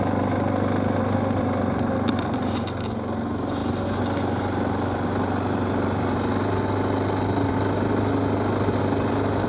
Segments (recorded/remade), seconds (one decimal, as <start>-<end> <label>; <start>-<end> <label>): 0.0-9.5 recorded